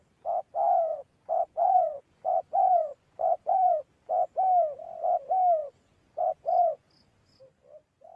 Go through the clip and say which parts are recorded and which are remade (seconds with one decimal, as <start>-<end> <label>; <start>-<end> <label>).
0.0-0.9 recorded; 0.9-3.8 remade; 3.8-5.6 recorded; 5.6-7.4 remade; 7.4-8.2 recorded